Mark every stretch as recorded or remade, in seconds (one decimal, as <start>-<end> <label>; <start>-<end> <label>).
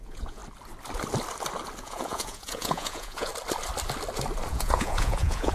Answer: 0.0-0.4 remade; 0.4-1.8 recorded; 1.8-3.3 remade; 3.3-4.5 recorded; 4.5-5.5 remade